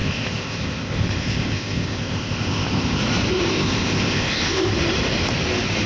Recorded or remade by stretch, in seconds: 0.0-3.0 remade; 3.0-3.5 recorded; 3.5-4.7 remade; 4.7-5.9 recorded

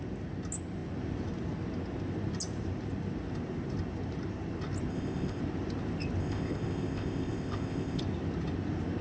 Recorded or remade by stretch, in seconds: 0.0-4.9 recorded; 4.9-5.4 remade; 5.4-6.2 recorded; 6.2-8.0 remade; 8.0-9.0 recorded

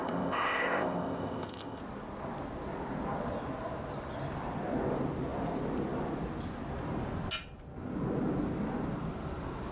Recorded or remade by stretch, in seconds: 0.0-1.8 remade; 1.8-9.7 recorded

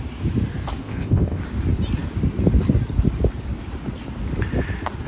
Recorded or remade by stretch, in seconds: 0.0-0.8 recorded; 0.8-1.4 remade; 1.4-5.1 recorded

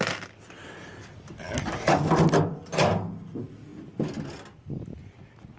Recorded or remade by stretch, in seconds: 0.0-5.6 recorded

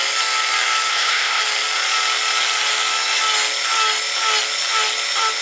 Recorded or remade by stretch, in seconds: 0.0-0.9 recorded; 0.9-1.4 remade; 1.4-5.4 recorded

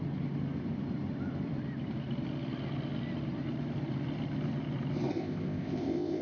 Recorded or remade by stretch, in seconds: 0.0-5.1 recorded; 5.1-6.2 remade

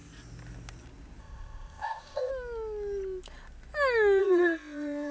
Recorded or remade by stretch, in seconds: 0.0-1.2 recorded; 1.2-2.3 remade; 2.3-4.2 recorded; 4.2-5.1 remade